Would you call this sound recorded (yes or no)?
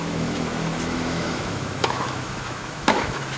no